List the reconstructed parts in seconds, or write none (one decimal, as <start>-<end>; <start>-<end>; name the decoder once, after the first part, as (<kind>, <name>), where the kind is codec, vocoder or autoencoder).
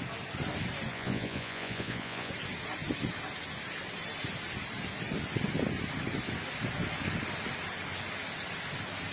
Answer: 0.9-2.3 (vocoder, Vocos)